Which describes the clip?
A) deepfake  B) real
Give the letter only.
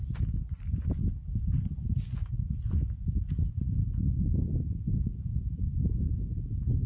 B